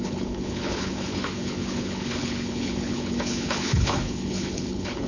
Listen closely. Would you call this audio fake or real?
fake